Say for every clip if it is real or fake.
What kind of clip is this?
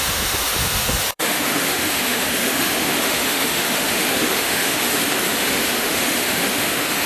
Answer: fake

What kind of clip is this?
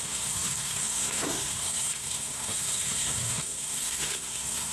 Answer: fake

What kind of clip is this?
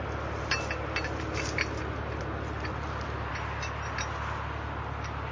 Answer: real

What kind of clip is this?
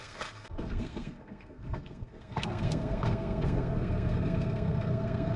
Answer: fake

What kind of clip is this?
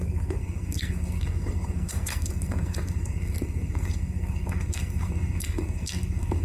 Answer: fake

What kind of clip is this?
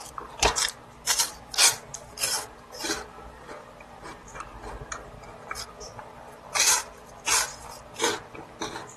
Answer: fake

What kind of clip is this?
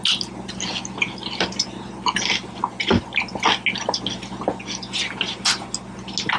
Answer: real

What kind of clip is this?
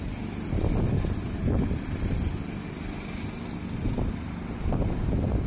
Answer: real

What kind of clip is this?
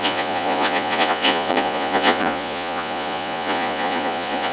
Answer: fake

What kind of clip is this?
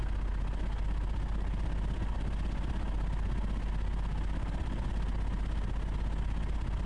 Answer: real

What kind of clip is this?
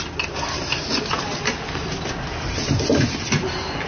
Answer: real